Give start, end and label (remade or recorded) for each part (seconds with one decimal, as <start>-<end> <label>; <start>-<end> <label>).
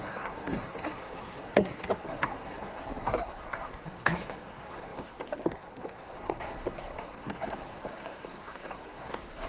0.0-9.5 remade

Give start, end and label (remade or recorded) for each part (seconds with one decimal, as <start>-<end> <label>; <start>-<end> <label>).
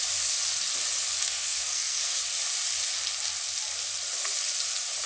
0.0-1.1 recorded; 1.1-2.2 remade; 2.2-5.1 recorded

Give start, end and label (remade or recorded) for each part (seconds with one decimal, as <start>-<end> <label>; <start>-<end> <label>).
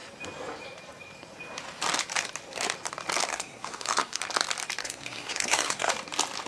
0.0-3.3 recorded; 3.3-4.2 remade; 4.2-4.8 recorded; 4.8-5.9 remade; 5.9-6.5 recorded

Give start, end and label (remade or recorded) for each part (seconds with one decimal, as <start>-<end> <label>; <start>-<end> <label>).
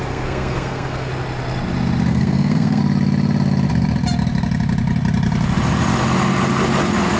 0.0-1.1 remade; 1.1-2.1 recorded; 2.1-2.8 remade; 2.8-7.2 recorded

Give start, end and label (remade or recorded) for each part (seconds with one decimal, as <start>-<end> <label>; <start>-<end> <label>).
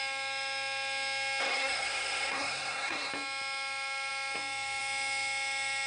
0.0-1.4 recorded; 1.4-3.1 remade; 3.1-5.9 recorded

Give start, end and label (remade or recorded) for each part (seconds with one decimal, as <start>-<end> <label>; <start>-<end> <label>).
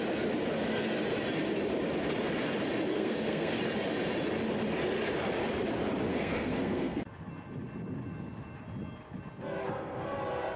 0.0-2.9 recorded; 2.9-3.6 remade; 3.6-6.1 recorded; 6.1-7.0 remade; 7.0-9.6 recorded; 9.6-10.2 remade; 10.2-10.6 recorded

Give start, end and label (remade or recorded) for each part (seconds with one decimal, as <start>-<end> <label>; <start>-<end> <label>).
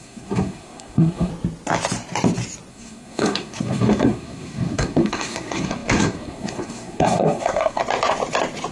0.0-1.3 remade; 1.3-2.7 recorded; 2.7-7.8 remade; 7.8-8.7 recorded